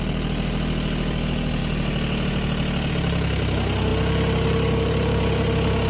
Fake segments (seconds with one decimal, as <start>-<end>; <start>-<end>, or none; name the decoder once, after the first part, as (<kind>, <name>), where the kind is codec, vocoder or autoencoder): none